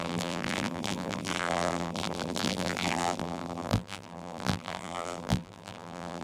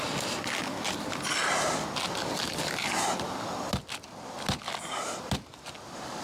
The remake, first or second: first